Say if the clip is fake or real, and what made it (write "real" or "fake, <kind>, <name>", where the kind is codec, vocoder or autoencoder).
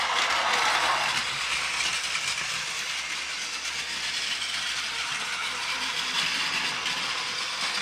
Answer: real